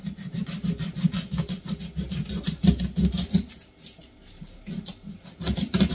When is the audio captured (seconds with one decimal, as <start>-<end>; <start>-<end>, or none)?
0.0-5.9

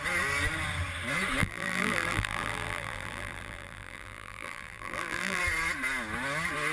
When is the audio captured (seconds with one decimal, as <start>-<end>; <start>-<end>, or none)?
0.0-1.4; 5.4-6.7